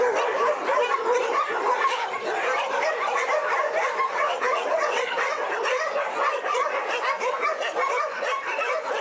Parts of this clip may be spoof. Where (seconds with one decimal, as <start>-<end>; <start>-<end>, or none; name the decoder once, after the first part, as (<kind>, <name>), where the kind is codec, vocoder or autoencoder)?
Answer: 4.1-5.4 (vocoder, WaveNeXt)